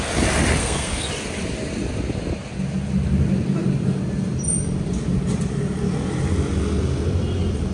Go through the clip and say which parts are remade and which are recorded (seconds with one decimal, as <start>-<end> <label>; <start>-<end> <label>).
0.0-0.6 recorded; 0.6-1.1 remade; 1.1-7.7 recorded